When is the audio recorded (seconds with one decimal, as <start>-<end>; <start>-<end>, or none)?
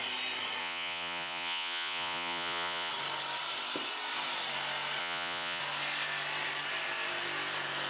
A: 0.0-0.6; 2.9-5.0; 5.6-7.9